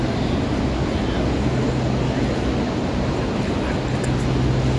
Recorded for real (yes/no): yes